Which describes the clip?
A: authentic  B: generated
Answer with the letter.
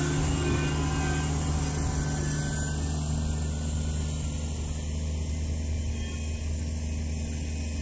A